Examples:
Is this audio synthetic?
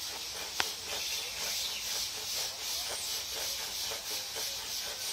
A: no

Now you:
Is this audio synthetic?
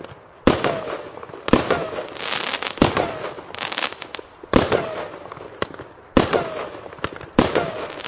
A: no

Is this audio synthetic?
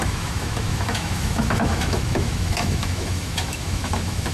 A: yes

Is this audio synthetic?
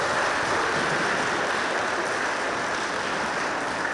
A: no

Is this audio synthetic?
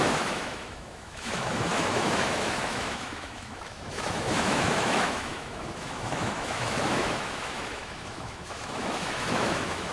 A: yes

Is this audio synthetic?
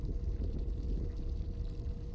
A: no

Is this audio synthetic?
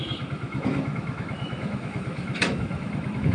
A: yes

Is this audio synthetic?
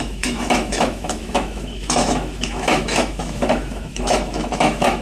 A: yes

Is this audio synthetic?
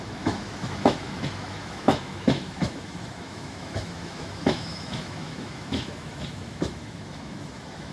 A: yes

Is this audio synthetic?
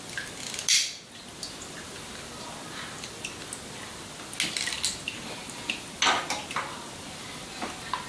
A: no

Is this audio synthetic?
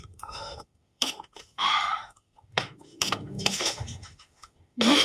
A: yes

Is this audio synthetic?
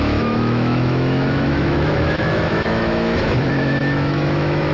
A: yes